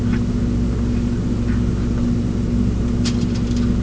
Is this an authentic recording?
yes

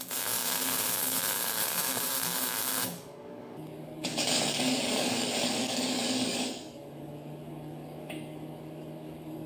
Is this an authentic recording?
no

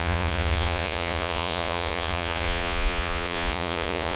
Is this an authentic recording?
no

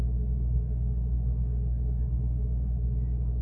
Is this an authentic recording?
yes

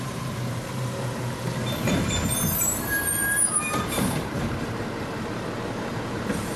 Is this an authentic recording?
no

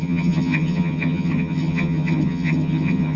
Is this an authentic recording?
no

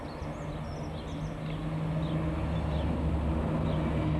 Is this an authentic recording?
yes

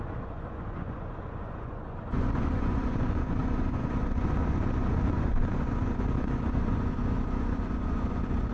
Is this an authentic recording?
no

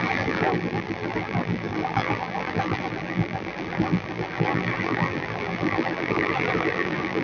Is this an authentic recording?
no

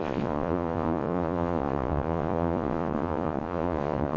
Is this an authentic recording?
no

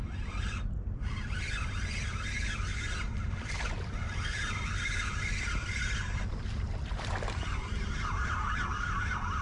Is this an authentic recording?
no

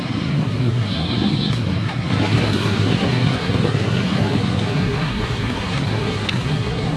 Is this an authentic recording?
no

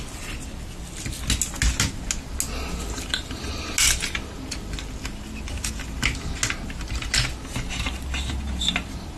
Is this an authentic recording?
yes